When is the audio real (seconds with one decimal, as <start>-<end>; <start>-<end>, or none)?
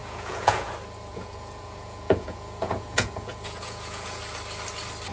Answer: 0.7-1.1; 4.2-5.1